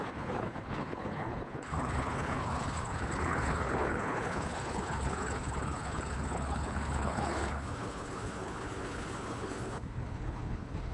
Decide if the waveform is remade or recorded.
remade